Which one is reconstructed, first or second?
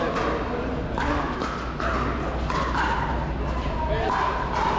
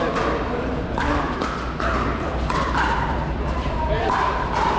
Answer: second